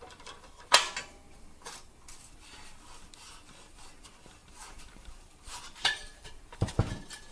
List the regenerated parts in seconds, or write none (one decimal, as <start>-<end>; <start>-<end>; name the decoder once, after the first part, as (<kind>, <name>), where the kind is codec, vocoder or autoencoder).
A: 4.4-6.7 (vocoder, BigVGAN v2)